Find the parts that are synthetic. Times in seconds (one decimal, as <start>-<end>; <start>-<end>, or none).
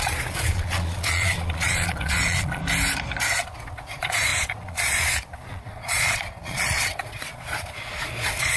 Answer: 0.0-2.6; 3.3-8.6